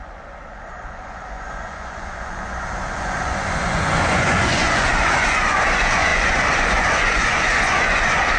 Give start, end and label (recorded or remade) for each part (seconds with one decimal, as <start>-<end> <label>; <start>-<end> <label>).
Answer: 0.0-8.4 remade